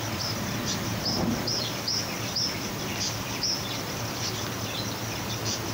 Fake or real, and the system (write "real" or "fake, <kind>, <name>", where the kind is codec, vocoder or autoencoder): real